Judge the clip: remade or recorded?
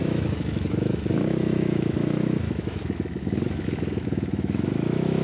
remade